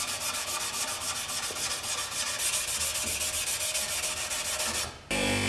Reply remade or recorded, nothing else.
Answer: recorded